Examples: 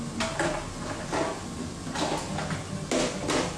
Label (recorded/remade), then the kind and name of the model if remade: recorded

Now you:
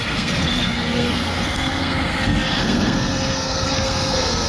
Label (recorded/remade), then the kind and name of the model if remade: remade, codec, SNAC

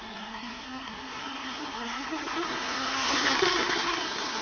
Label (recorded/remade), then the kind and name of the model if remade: remade, codec, SNAC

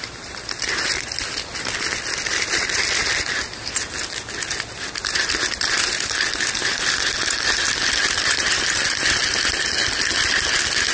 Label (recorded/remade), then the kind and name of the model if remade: recorded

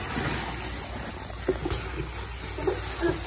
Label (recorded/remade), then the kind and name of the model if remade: recorded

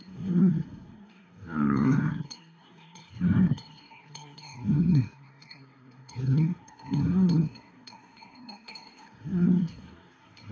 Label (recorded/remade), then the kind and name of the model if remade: remade, codec, SNAC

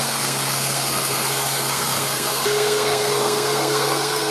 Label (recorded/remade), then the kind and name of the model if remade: remade, codec, SNAC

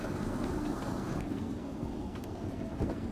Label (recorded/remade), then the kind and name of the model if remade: remade, codec, SNAC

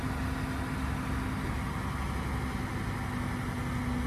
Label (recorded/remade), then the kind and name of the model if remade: recorded